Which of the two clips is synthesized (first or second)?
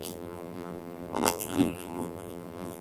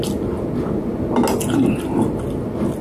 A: first